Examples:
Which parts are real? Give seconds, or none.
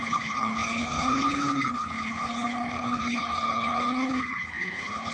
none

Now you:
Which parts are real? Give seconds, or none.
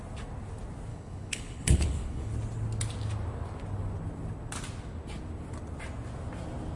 0.0-0.9; 2.3-6.8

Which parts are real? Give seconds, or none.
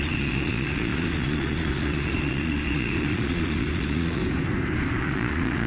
4.2-5.0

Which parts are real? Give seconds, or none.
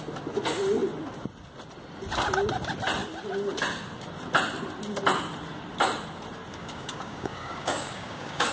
0.0-6.5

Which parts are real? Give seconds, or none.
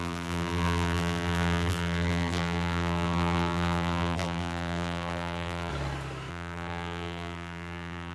5.7-6.3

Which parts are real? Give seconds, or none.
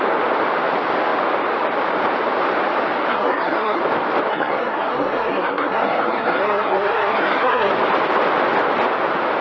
0.0-3.1; 3.8-4.3; 7.7-9.4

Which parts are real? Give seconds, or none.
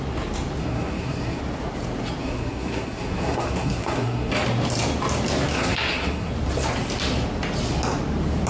0.0-0.6; 1.4-2.2; 4.3-5.5; 6.3-8.5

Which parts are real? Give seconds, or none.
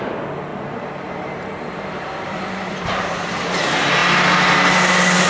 0.0-0.5; 3.3-5.3